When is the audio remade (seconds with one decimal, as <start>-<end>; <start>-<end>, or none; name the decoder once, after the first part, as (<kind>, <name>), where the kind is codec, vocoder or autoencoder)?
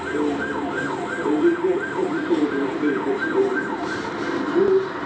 1.7-4.0 (vocoder, BigVGAN v2)